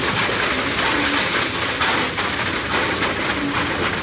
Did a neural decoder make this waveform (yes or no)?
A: no